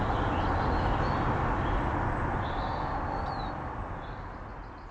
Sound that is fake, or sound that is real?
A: real